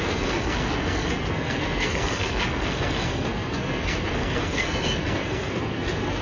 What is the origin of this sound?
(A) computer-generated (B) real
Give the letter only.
A